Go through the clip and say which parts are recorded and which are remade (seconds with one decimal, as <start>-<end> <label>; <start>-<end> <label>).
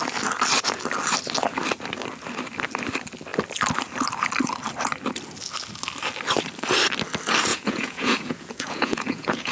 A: 0.0-7.5 recorded; 7.5-9.5 remade